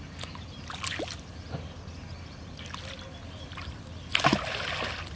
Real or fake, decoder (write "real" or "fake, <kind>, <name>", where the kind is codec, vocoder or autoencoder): real